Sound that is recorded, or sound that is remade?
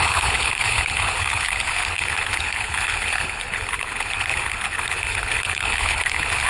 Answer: remade